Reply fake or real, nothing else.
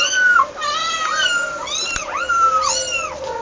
real